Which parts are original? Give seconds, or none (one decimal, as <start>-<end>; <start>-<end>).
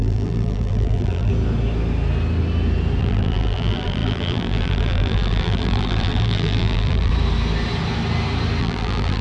1.3-3.0; 7.1-8.6